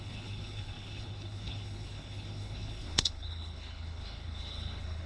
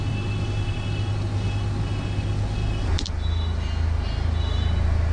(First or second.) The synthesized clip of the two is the first